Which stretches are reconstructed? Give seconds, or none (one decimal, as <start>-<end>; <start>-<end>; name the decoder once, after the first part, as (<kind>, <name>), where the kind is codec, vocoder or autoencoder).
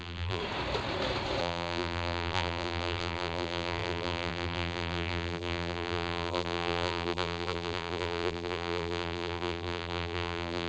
0.0-0.4 (vocoder, BigVGAN v2); 1.4-10.7